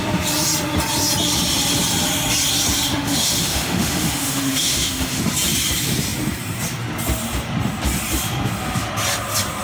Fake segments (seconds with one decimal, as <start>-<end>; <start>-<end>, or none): 2.9-5.2